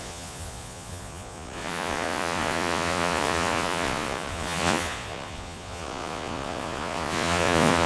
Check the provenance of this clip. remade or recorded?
remade